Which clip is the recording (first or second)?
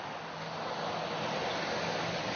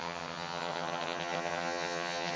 first